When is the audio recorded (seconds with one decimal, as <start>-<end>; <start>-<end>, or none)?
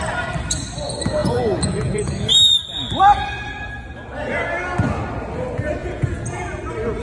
0.0-1.2; 2.1-5.8; 6.6-7.0